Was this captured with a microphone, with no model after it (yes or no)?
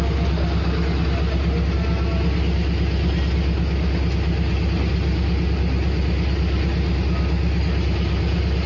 yes